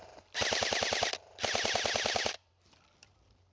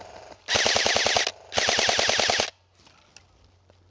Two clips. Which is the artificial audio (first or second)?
first